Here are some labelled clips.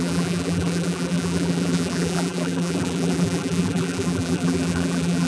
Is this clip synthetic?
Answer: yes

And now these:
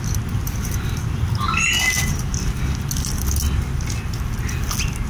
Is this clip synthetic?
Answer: no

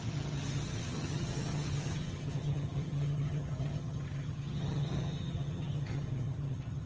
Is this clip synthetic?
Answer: yes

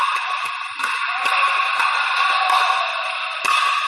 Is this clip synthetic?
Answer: no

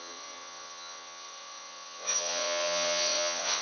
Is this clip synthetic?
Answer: yes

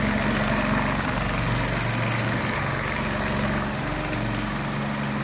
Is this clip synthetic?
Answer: no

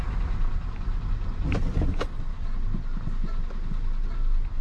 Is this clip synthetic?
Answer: no